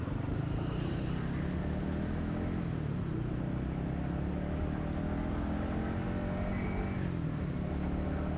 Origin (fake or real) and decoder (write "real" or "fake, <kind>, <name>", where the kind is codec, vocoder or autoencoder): real